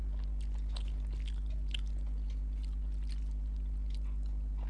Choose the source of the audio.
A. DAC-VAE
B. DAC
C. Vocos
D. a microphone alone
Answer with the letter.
D